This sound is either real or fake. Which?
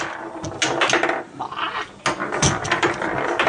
real